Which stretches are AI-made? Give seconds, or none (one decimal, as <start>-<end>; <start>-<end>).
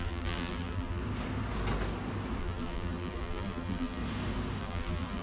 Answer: 0.0-1.0; 2.4-4.0; 4.6-5.2